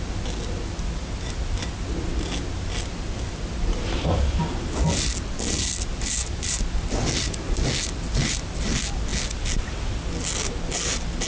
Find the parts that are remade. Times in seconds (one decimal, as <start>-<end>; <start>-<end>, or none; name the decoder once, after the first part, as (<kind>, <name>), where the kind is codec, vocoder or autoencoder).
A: none